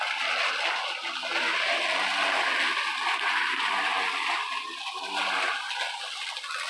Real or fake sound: real